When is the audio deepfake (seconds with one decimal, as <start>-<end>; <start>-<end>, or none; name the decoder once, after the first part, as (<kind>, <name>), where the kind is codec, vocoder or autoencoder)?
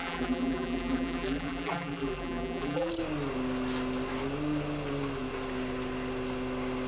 0.0-2.9 (vocoder, BigVGAN v2)